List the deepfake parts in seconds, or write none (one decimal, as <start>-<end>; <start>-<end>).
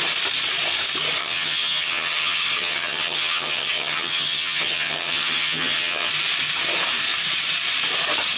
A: 1.2-6.1